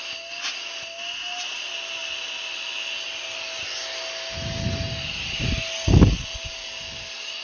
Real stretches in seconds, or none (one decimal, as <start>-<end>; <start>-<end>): 0.0-7.4